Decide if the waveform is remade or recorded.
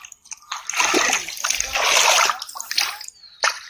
recorded